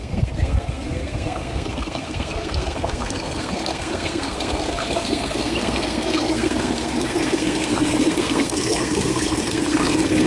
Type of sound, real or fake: fake